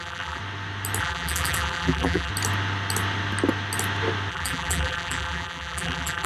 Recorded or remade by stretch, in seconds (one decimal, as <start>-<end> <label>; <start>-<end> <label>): 0.0-0.4 remade; 0.4-1.0 recorded; 1.0-2.3 remade; 2.3-4.3 recorded; 4.3-6.3 remade